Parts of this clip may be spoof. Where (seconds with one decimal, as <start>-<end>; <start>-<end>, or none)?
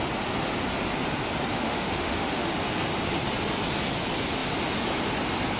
1.5-2.5